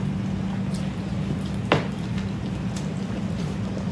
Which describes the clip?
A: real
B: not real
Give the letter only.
A